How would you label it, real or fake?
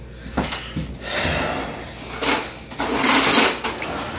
real